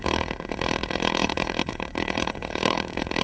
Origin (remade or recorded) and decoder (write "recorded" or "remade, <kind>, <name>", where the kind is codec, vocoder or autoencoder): remade, codec, HILCodec